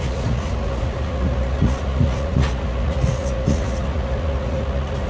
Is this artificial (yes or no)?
yes